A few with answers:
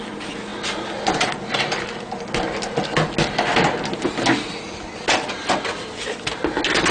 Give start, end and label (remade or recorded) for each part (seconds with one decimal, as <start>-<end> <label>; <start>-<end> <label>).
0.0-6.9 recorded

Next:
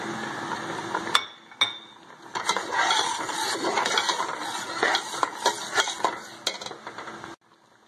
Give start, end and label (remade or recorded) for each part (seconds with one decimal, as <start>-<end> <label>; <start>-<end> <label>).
0.0-7.9 recorded

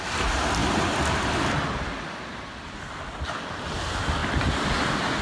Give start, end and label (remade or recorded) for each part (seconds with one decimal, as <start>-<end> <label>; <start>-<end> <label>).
0.0-5.2 recorded

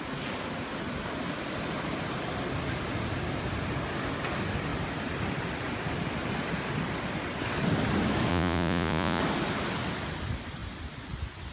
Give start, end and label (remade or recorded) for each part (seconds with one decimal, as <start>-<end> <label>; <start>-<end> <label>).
0.0-8.3 recorded; 8.3-9.2 remade; 9.2-11.5 recorded